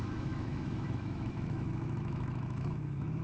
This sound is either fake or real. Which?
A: fake